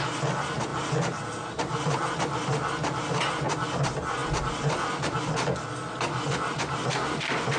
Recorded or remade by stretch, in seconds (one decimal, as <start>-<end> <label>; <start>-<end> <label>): 0.0-7.6 recorded